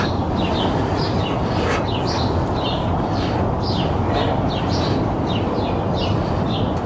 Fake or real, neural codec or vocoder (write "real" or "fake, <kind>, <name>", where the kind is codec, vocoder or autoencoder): real